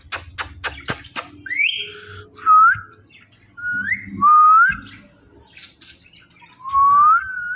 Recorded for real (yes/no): yes